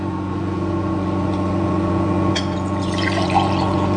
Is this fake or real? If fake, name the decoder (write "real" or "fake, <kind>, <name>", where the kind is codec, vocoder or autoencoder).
fake, vocoder, Vocos